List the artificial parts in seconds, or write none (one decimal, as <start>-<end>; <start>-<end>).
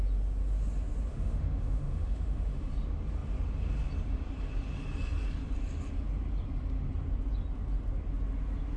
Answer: 1.1-2.7